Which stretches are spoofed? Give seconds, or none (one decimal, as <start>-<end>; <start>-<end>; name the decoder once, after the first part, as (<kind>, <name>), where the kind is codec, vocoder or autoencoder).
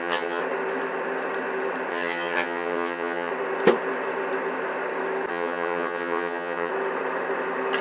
0.0-0.4 (vocoder, HiFi-GAN); 1.9-3.3; 5.3-6.7